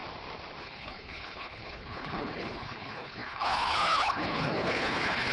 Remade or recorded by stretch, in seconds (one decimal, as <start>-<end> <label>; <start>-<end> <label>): 0.0-0.6 recorded; 0.6-5.3 remade